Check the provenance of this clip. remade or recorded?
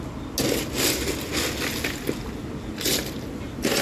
recorded